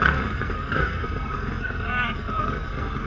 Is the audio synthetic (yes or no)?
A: yes